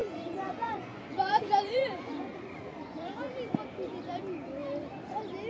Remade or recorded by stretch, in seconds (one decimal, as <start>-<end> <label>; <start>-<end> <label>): 0.0-3.3 remade; 3.3-5.5 recorded